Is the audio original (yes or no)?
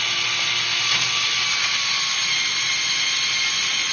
yes